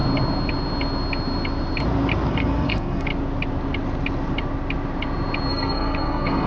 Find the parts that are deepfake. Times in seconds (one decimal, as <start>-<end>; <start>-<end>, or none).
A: 2.3-3.1; 5.5-6.5